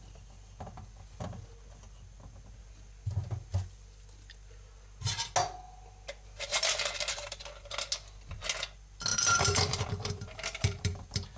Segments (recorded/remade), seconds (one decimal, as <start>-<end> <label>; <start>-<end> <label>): 0.0-6.5 recorded; 6.5-7.4 remade; 7.4-9.1 recorded; 9.1-11.4 remade